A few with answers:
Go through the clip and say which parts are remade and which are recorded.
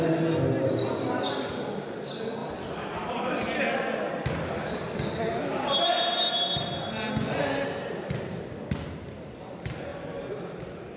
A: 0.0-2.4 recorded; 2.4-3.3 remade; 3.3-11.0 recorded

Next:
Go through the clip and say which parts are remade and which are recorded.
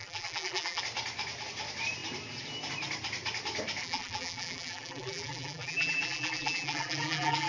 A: 0.0-0.8 remade; 0.8-3.8 recorded; 3.8-7.5 remade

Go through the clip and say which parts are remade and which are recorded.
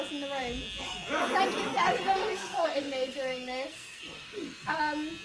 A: 0.0-1.7 recorded; 1.7-4.8 remade; 4.8-5.2 recorded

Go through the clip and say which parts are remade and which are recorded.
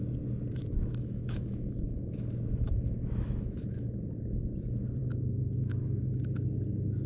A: 0.0-0.6 recorded; 0.6-4.0 remade; 4.0-5.0 recorded; 5.0-6.0 remade; 6.0-7.1 recorded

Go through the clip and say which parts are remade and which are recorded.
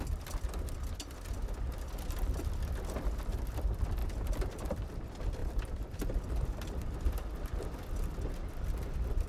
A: 0.0-5.4 recorded; 5.4-6.7 remade; 6.7-9.3 recorded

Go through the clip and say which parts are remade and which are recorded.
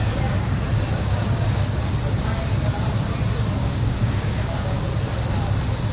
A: 0.0-0.9 recorded; 0.9-1.9 remade; 1.9-3.6 recorded; 3.6-4.8 remade; 4.8-5.9 recorded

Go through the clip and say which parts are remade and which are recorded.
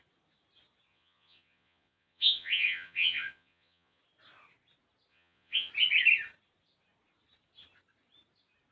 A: 0.0-0.9 recorded; 0.9-4.0 remade; 4.0-5.1 recorded; 5.1-5.7 remade; 5.7-8.7 recorded